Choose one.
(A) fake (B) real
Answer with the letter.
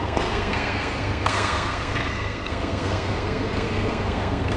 A